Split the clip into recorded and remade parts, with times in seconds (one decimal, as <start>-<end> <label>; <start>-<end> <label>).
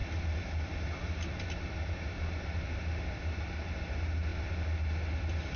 0.0-5.6 recorded